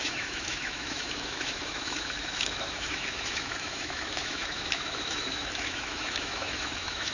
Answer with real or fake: fake